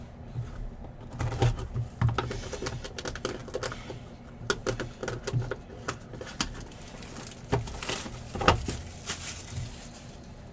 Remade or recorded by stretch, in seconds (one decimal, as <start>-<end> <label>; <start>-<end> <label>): 0.0-10.5 recorded

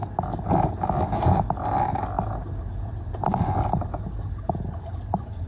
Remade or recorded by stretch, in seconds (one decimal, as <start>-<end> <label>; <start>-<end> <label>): 0.0-5.5 recorded

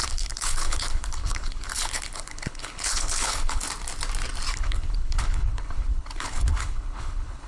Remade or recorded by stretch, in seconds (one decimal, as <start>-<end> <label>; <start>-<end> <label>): 0.0-3.6 remade; 3.6-4.5 recorded; 4.5-7.5 remade

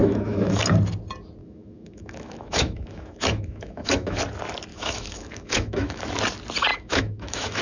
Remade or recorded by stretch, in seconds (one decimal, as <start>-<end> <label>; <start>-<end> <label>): 0.0-0.6 remade; 0.6-1.4 recorded; 1.4-4.2 remade; 4.2-4.7 recorded; 4.7-6.0 remade; 6.0-6.7 recorded; 6.7-7.6 remade

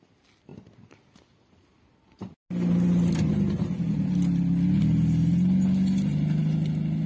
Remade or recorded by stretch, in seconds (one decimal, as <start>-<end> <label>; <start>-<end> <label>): 0.0-7.1 recorded

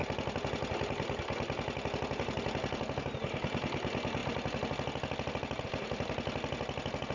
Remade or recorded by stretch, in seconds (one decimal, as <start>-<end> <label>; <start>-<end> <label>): 0.0-7.1 recorded

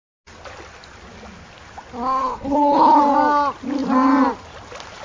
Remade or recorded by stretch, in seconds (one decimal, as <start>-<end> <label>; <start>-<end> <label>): 0.0-2.2 recorded; 2.2-3.0 remade; 3.0-5.0 recorded

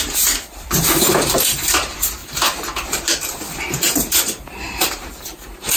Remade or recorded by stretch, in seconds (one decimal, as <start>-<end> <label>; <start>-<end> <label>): 0.0-5.8 remade